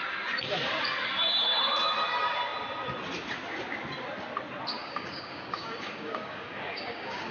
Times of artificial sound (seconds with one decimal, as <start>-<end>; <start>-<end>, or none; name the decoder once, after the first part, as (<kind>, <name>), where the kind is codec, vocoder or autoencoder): 4.8-7.3 (codec, DAC)